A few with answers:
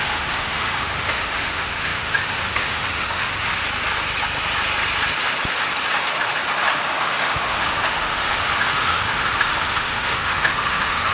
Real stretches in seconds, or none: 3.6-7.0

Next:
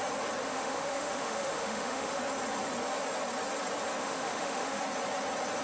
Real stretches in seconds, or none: 0.0-0.4; 2.2-4.0; 4.8-5.6

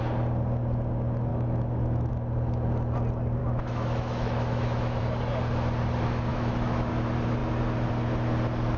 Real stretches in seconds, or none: 0.0-1.3; 2.1-3.4; 5.0-6.3; 6.9-8.8

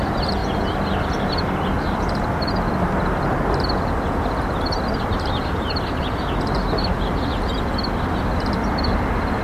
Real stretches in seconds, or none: 0.0-9.4

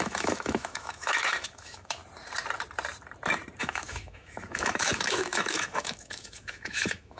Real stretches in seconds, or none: 2.0-3.6

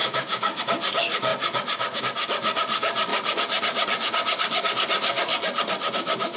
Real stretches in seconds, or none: 0.6-6.4

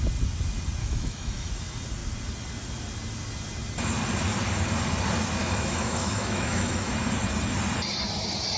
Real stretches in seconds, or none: 0.0-0.8; 1.5-5.4; 6.9-8.6

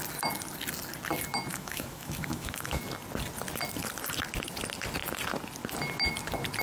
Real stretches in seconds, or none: 0.0-1.5; 2.8-6.6